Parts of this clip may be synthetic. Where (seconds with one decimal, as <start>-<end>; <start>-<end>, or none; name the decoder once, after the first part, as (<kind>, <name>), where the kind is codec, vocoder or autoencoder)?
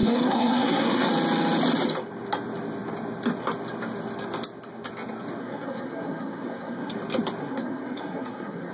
0.0-1.1 (codec, SNAC); 5.4-6.9; 7.4-8.7